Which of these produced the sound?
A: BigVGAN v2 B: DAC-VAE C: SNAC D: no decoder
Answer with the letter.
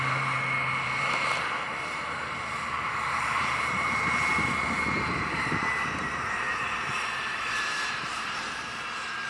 A